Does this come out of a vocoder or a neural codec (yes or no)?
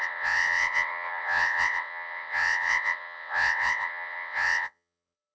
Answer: yes